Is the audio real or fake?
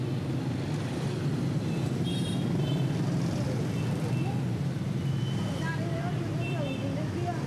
real